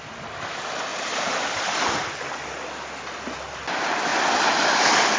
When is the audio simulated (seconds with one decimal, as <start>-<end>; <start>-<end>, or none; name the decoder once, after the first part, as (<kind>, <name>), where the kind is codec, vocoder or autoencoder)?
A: 0.9-2.1 (vocoder, BigVGAN v2)